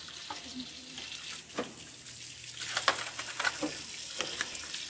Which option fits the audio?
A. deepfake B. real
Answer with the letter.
B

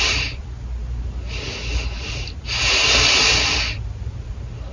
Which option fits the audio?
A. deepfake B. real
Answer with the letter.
B